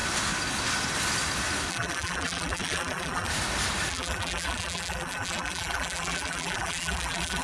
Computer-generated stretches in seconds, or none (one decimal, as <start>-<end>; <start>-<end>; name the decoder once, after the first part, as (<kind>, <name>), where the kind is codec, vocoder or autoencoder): 1.7-3.3 (vocoder, BigVGAN v2); 3.9-7.4